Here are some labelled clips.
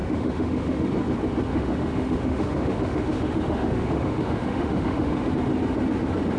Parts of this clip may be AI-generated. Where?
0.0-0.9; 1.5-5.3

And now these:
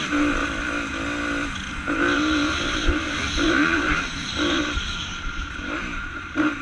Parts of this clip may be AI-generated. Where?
0.0-0.4; 1.9-6.6

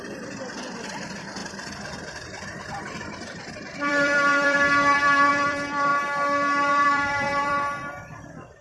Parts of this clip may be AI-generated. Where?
0.0-5.9; 6.7-8.6

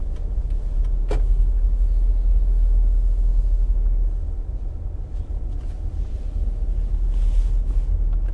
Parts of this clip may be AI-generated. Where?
none